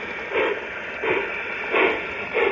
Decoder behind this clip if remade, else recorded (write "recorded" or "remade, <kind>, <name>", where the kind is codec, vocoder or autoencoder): recorded